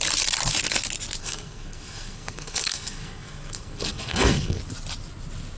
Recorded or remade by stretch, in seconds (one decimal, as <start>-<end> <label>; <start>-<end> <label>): 0.0-1.2 recorded; 1.2-4.6 remade; 4.6-5.6 recorded